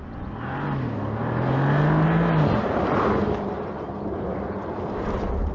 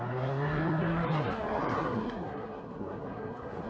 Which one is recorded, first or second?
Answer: first